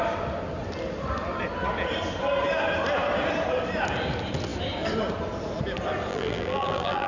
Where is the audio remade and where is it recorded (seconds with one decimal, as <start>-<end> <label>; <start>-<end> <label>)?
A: 0.0-6.1 recorded; 6.1-7.1 remade